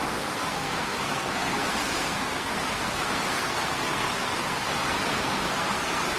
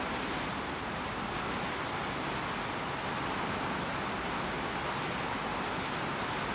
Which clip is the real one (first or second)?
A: second